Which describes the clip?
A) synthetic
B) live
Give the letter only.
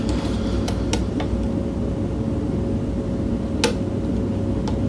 B